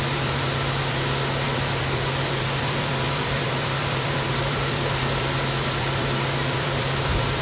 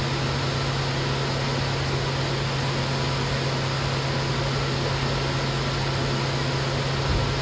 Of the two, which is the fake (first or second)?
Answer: first